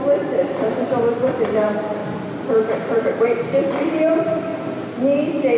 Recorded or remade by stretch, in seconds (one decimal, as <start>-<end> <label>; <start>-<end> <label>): 0.0-4.5 remade; 4.5-5.6 recorded